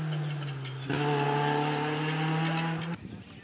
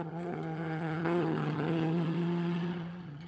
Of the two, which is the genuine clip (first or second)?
first